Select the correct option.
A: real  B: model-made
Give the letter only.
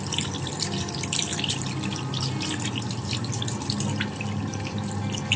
A